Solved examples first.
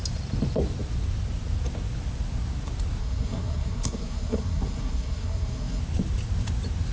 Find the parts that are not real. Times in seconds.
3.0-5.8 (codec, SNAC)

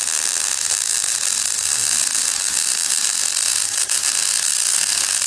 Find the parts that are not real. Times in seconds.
4.5-5.3 (autoencoder, DAC-VAE)

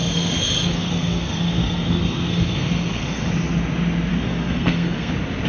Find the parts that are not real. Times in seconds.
0.0-3.3 (codec, SNAC); 4.1-5.1

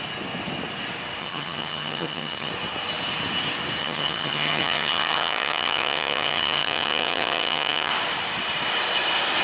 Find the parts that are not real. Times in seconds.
1.2-2.5 (vocoder, HiFi-GAN); 3.8-7.9

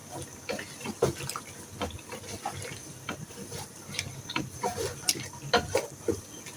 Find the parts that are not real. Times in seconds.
2.8-5.4 (vocoder, BigVGAN v2)

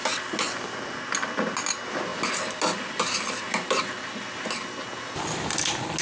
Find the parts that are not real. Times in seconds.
none

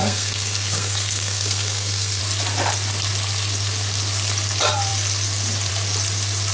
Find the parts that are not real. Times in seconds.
0.0-2.2 (codec, SNAC)

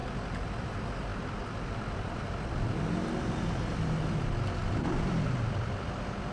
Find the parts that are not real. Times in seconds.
none